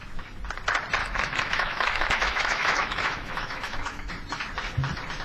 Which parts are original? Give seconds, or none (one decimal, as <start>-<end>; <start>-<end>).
0.0-1.0; 4.1-5.2